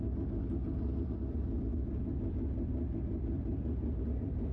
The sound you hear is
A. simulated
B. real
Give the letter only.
B